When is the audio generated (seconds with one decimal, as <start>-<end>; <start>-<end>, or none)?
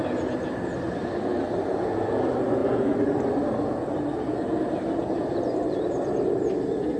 none